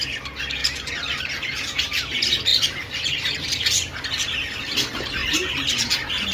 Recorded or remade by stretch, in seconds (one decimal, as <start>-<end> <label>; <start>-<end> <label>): 0.0-0.6 recorded; 0.6-1.2 remade; 1.2-2.5 recorded; 2.5-3.1 remade; 3.1-5.2 recorded; 5.2-5.7 remade; 5.7-6.3 recorded